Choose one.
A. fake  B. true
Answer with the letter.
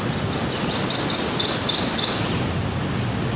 B